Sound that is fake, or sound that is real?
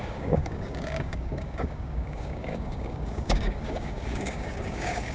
fake